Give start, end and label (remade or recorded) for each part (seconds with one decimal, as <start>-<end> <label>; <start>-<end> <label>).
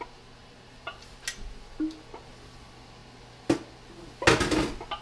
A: 0.0-0.4 recorded; 0.4-1.2 remade; 1.2-5.0 recorded